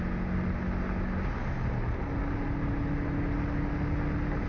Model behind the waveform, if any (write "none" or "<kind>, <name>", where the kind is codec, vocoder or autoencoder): none